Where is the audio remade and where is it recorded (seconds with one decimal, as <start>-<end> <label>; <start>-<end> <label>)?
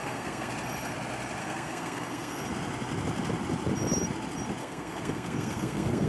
0.0-0.5 remade; 0.5-1.4 recorded; 1.4-2.4 remade; 2.4-4.6 recorded; 4.6-6.1 remade